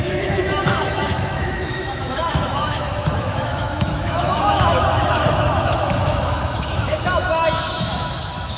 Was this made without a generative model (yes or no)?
no